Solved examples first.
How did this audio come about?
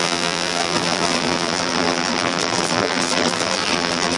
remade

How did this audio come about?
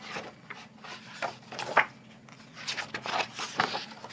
recorded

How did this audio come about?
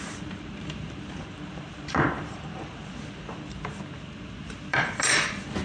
remade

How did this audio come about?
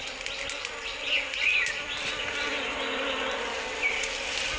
recorded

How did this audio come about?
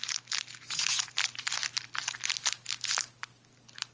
recorded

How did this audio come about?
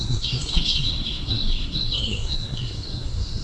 remade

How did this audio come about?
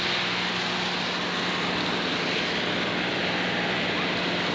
recorded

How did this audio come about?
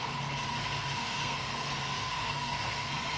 remade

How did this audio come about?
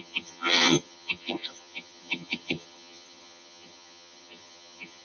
remade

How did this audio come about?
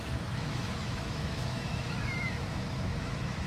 remade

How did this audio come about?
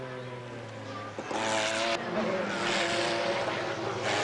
recorded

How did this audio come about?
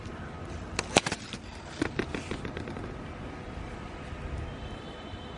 recorded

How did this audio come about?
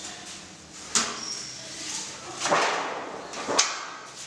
recorded